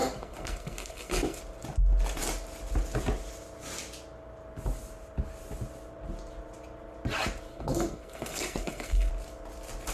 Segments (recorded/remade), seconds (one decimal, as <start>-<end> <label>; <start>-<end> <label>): 0.0-1.4 remade; 1.4-7.5 recorded; 7.5-9.1 remade; 9.1-9.9 recorded